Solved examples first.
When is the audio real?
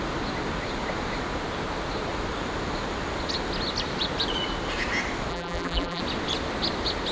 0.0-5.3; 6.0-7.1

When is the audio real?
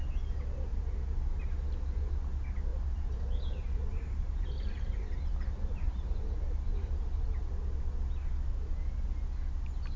0.0-0.7; 1.5-2.7; 6.2-6.7; 7.8-10.0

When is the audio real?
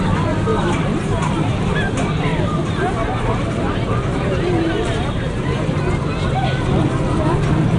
0.0-0.5; 1.7-2.3; 5.8-7.8